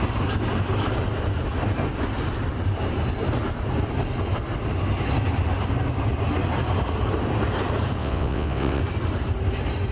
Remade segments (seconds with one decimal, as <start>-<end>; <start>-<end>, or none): 8.0-8.8